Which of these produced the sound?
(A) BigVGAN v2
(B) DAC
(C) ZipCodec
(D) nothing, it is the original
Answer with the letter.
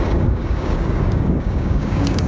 B